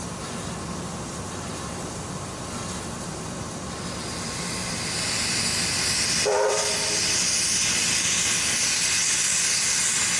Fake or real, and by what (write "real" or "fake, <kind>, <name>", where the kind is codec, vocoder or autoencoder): real